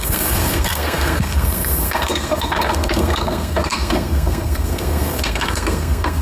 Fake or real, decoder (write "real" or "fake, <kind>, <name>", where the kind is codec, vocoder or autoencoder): fake, codec, SNAC